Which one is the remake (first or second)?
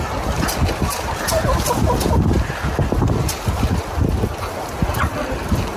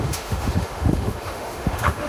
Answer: second